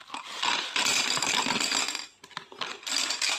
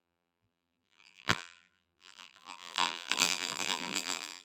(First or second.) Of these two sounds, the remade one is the second